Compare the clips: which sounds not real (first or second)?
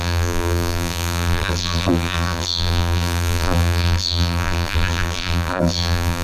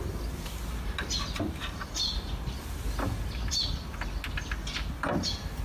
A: first